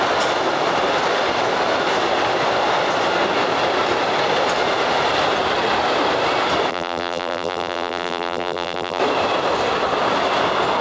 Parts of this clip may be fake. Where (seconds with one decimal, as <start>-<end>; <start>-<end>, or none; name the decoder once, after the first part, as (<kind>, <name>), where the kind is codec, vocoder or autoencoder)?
6.7-9.0 (vocoder, BigVGAN v2)